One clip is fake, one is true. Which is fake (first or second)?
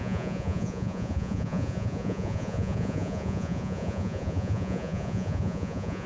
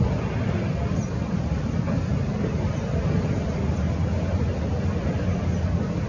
first